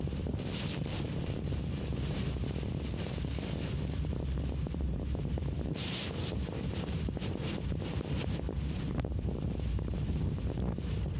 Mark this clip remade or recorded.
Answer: remade